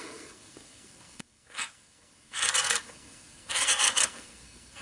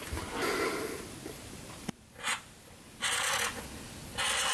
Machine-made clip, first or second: first